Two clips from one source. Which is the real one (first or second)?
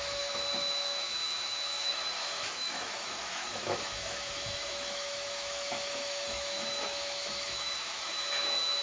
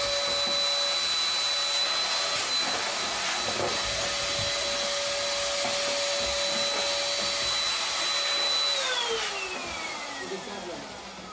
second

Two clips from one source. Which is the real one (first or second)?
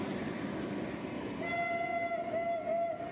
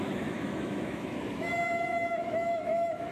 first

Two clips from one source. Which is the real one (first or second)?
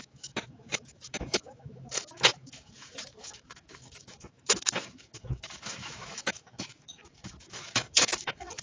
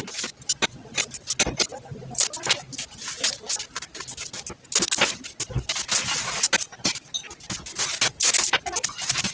second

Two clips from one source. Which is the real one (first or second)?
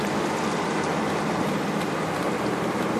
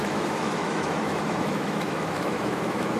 first